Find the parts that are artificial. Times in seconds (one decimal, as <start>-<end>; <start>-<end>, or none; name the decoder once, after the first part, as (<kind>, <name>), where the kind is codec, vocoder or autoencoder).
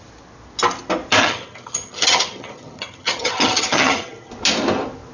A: 1.2-4.3 (vocoder, HiFi-GAN)